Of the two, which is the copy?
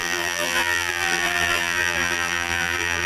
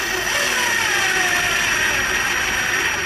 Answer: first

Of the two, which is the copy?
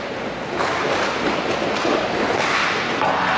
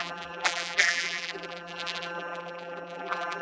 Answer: second